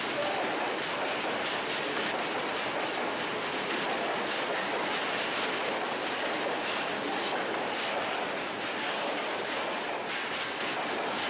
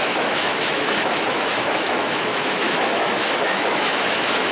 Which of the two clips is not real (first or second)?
second